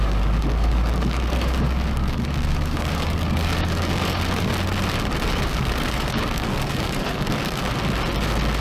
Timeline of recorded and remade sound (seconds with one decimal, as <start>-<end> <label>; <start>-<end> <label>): 0.0-4.5 remade; 4.5-5.3 recorded; 5.3-7.6 remade; 7.6-8.6 recorded